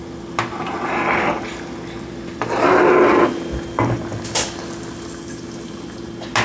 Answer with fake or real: real